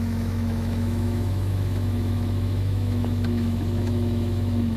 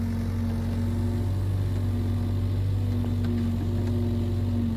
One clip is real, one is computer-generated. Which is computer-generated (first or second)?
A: first